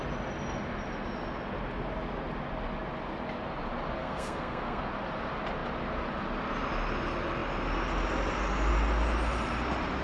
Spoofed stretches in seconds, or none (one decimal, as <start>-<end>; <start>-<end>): 4.0-4.8